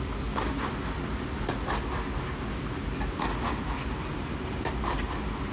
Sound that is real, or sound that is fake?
real